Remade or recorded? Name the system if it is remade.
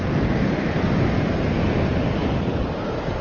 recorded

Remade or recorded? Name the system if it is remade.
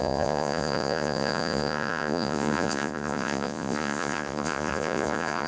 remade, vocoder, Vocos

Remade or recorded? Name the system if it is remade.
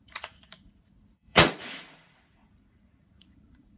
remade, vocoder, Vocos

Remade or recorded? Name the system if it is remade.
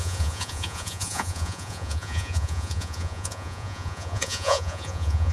remade, vocoder, Vocos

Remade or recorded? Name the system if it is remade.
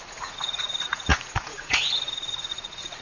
remade, vocoder, Vocos